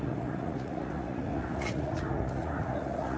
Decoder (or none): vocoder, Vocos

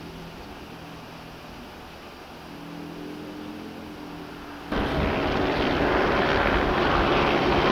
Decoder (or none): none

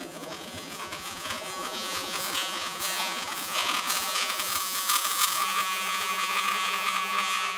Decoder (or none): vocoder, Vocos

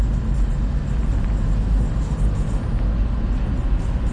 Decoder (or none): none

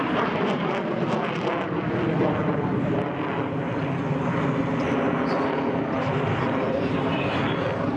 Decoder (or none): none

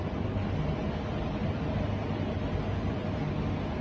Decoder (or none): none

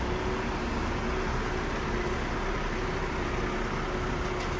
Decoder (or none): none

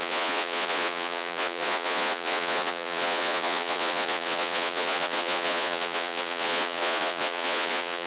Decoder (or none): vocoder, Vocos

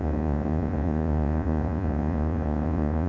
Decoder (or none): vocoder, Vocos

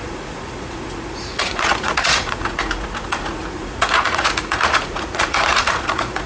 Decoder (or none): vocoder, Vocos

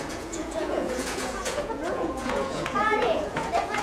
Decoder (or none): vocoder, Vocos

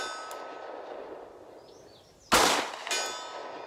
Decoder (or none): none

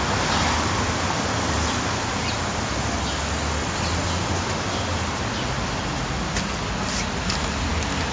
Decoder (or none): none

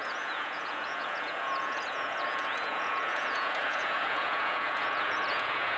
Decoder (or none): vocoder, Vocos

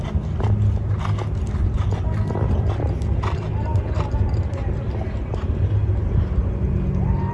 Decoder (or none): none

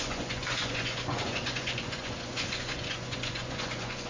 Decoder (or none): vocoder, Vocos